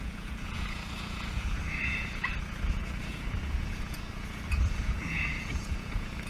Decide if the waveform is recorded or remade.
remade